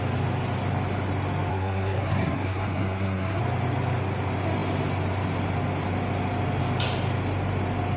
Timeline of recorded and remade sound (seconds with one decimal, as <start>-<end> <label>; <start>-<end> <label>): 0.0-1.5 recorded; 1.5-3.4 remade; 3.4-8.0 recorded